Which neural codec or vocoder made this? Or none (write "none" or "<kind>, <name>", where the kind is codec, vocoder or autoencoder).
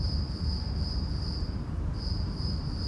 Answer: vocoder, BigVGAN v2